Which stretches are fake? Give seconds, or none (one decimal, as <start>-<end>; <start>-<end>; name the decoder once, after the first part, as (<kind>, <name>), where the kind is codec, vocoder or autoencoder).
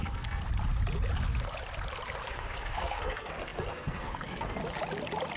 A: 0.0-0.4 (codec, SNAC); 2.3-4.6